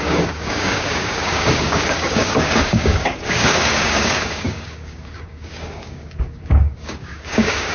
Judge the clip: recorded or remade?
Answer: remade